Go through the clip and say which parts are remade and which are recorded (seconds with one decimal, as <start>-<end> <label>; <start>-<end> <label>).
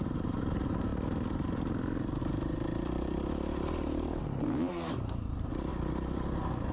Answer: 0.0-0.9 remade; 0.9-2.2 recorded; 2.2-5.7 remade; 5.7-6.7 recorded